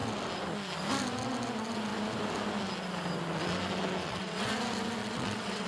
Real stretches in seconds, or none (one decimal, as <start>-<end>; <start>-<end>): 0.0-4.0; 4.5-5.0